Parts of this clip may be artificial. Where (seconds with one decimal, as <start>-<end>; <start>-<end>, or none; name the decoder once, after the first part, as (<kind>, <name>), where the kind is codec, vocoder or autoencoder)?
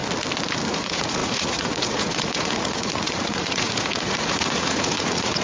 0.7-5.4 (vocoder, Vocos)